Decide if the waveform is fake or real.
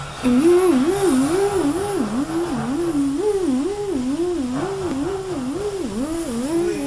real